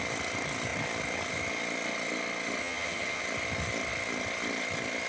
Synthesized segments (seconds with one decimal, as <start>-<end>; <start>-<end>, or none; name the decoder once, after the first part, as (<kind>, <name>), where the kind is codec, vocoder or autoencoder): 2.6-3.2 (vocoder, HiFi-GAN)